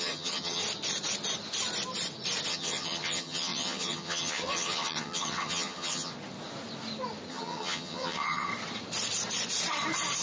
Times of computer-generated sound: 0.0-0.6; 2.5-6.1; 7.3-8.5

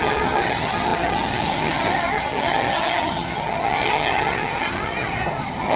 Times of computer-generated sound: 0.0-5.8

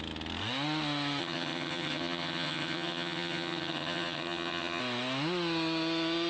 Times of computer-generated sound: 1.2-4.8

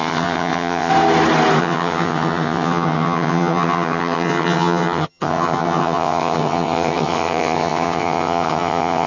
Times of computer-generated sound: 0.0-0.9; 1.6-9.1

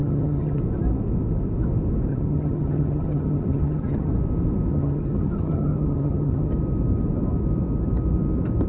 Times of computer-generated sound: 0.0-0.6; 2.1-4.1; 4.7-6.5

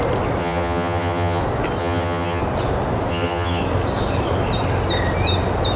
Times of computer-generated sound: 0.4-1.4; 1.8-2.4; 3.1-3.6